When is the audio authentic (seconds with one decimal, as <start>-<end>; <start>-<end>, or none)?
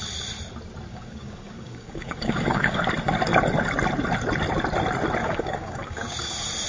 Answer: 0.0-0.9; 2.8-5.2; 6.3-6.7